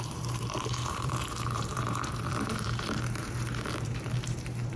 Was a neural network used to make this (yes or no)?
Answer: yes